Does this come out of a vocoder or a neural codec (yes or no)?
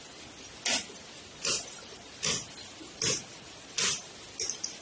no